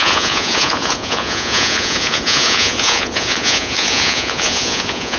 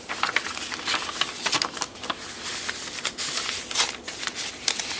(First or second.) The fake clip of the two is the first